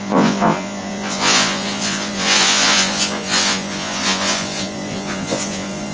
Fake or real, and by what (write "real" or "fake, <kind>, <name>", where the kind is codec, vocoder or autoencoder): fake, vocoder, Vocos